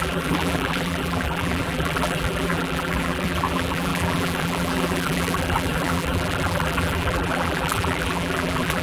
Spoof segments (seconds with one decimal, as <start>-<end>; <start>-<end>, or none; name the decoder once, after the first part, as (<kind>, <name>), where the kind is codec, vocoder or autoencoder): 0.0-8.8 (vocoder, BigVGAN v2)